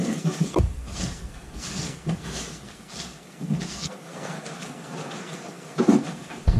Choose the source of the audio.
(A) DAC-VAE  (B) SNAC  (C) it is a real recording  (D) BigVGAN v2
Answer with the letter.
B